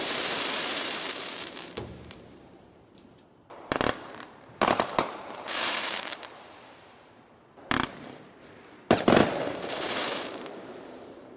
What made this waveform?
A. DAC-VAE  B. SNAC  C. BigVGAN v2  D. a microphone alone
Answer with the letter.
C